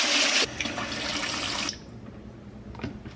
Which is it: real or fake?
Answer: real